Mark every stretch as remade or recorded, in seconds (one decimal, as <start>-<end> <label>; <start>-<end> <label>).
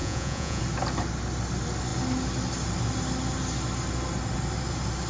0.0-0.6 remade; 0.6-5.1 recorded